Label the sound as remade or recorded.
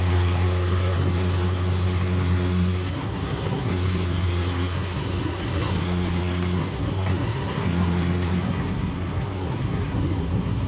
remade